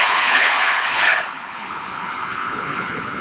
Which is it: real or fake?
fake